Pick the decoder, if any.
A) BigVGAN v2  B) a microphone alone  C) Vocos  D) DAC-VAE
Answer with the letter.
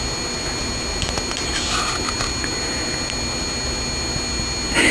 B